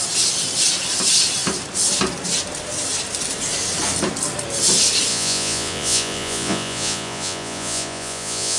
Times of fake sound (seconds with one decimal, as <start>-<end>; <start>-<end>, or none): 5.1-8.6